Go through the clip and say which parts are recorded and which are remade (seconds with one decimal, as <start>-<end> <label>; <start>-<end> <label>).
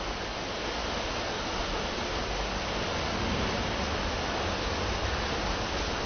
0.0-6.1 recorded